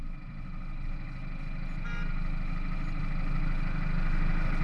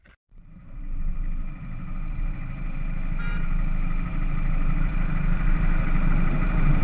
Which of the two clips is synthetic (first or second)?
second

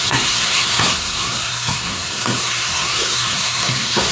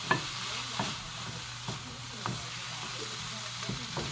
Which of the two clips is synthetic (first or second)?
first